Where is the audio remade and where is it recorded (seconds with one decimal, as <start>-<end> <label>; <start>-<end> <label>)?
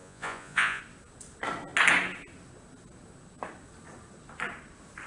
0.0-0.8 remade; 0.8-5.1 recorded